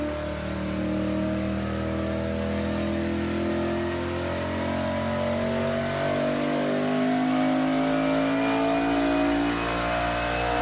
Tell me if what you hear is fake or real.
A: real